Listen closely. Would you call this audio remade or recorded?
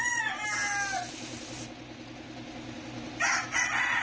recorded